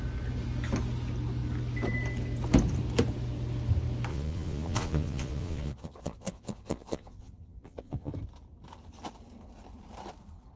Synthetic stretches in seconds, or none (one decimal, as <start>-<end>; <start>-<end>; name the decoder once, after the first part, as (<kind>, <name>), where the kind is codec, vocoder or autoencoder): 4.1-8.1 (vocoder, Vocos)